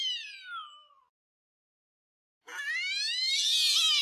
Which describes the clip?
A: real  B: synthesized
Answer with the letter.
A